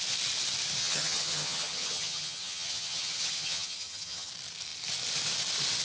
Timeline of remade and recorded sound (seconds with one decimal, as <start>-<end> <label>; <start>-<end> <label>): 0.0-0.8 recorded; 0.8-4.3 remade; 4.3-5.8 recorded